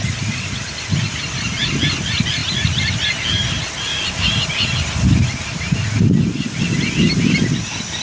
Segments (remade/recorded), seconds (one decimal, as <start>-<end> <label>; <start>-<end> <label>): 0.0-8.0 recorded